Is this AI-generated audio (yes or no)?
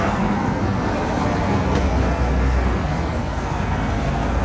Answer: yes